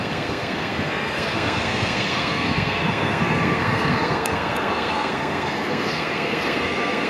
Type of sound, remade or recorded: remade